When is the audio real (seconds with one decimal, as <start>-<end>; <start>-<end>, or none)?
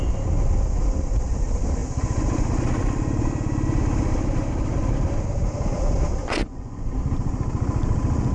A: 0.0-6.2; 6.9-8.3